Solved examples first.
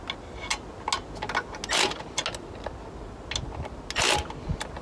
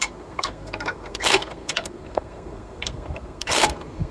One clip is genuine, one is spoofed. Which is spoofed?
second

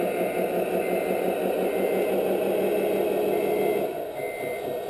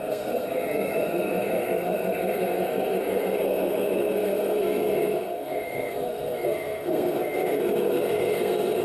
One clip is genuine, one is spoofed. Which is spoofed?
second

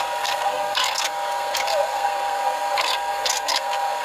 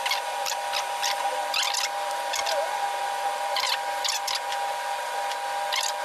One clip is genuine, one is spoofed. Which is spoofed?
first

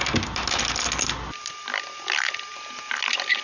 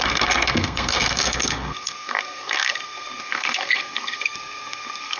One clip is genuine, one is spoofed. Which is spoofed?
second